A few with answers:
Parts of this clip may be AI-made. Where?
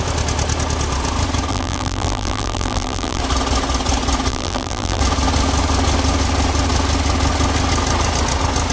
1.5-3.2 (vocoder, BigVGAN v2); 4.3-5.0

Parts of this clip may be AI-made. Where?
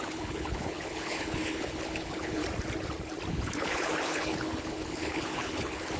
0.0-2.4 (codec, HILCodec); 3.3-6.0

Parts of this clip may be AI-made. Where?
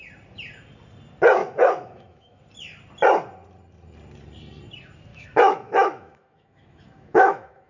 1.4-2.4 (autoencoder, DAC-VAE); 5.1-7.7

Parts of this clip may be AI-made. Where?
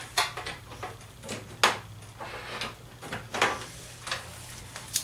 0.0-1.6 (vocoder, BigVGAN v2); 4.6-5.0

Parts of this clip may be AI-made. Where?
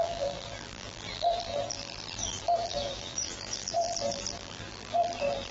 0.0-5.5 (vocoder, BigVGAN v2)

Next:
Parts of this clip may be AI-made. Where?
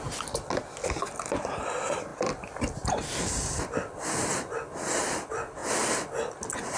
none